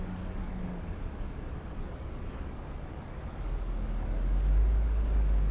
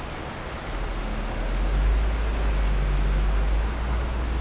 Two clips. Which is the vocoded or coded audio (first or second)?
first